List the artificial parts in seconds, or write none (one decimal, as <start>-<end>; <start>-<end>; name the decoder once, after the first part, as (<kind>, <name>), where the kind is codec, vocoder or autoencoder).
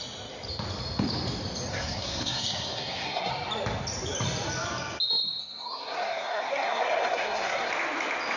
1.7-3.3 (codec, SNAC); 5.4-7.7